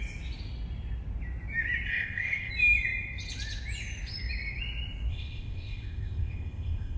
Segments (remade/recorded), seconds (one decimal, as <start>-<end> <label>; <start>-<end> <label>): 0.0-1.9 recorded; 1.9-2.5 remade; 2.5-5.1 recorded; 5.1-7.0 remade